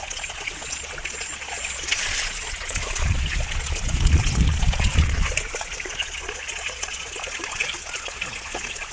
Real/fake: fake